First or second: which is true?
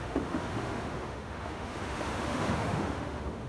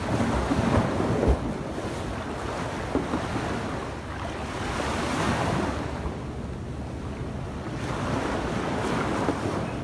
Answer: second